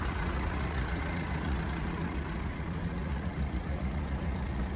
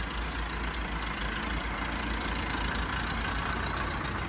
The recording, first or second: second